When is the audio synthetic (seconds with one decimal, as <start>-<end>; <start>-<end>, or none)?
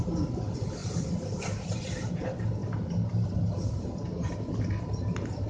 none